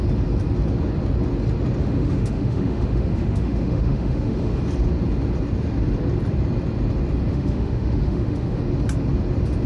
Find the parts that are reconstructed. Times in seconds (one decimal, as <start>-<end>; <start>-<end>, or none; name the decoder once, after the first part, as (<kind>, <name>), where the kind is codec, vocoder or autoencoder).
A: 1.8-4.6 (autoencoder, DAC-VAE); 7.3-8.6

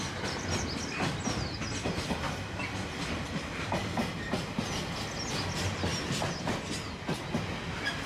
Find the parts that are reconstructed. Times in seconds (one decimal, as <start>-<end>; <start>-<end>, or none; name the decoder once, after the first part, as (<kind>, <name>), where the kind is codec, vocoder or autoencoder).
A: none

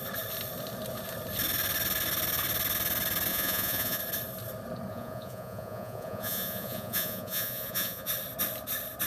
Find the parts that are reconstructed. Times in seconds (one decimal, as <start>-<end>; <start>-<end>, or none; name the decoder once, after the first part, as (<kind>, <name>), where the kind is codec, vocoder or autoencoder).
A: 3.3-4.0 (vocoder, Vocos); 4.9-8.1

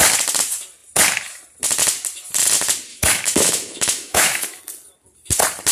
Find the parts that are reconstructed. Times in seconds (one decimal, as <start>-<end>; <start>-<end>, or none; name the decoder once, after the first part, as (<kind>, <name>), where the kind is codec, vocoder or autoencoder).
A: 2.9-4.6 (autoencoder, DAC-VAE)